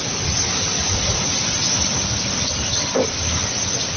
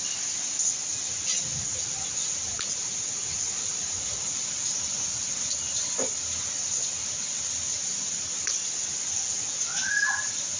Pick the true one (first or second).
second